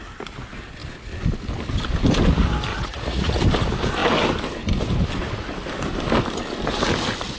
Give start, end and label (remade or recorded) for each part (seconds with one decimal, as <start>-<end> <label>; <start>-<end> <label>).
0.0-2.7 recorded; 2.7-3.4 remade; 3.4-7.4 recorded